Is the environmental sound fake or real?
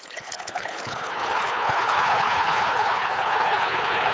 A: fake